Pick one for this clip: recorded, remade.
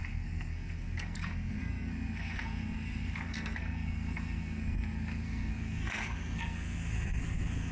remade